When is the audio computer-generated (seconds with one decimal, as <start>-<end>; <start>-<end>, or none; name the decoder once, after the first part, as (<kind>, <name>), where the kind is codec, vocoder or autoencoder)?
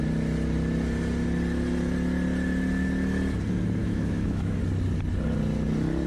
3.8-4.6 (autoencoder, DAC-VAE)